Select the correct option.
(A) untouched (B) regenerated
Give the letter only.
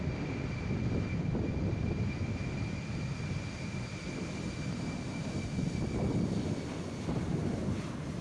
A